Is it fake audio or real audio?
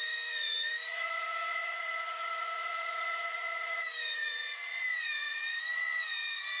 fake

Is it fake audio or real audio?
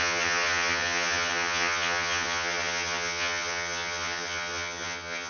fake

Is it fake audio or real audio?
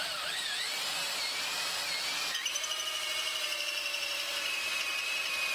fake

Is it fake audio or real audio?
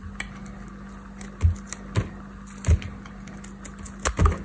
real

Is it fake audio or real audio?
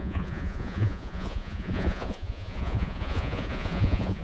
fake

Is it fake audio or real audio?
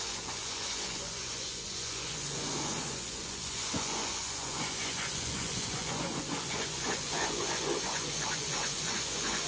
fake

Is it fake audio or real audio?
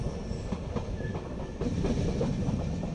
real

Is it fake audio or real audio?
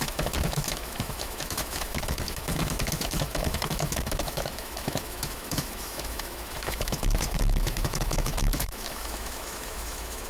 fake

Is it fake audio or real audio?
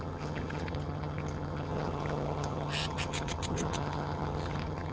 fake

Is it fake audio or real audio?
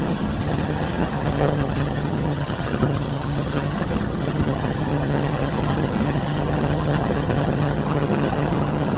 fake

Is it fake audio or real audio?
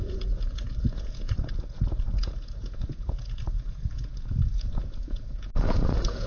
fake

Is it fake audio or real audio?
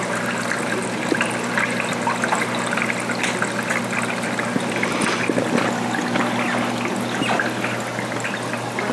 real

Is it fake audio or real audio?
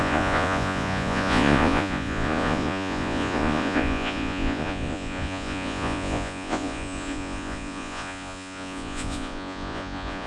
fake